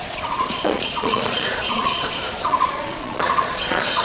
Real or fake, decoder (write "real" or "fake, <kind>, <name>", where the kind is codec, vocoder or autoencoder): fake, vocoder, Vocos